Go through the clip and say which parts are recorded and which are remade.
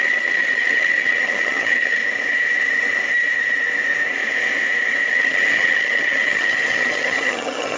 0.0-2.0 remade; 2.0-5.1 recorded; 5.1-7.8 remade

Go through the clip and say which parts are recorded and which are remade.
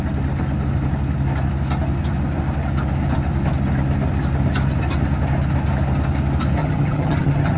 0.0-6.6 recorded; 6.6-7.6 remade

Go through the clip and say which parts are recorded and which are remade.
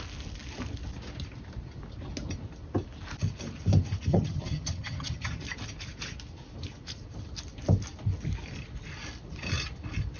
0.0-4.1 recorded; 4.1-5.4 remade; 5.4-10.2 recorded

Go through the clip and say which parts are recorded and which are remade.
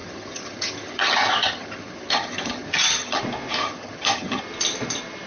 0.0-3.2 remade; 3.2-3.6 recorded; 3.6-4.4 remade; 4.4-5.3 recorded